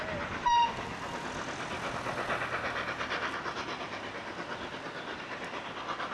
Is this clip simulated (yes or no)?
no